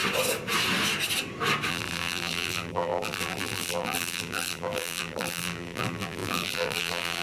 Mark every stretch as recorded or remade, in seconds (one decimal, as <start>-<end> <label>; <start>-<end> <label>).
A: 0.0-1.7 recorded; 1.7-7.2 remade